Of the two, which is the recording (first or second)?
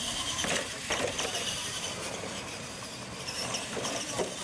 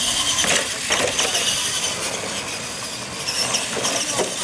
second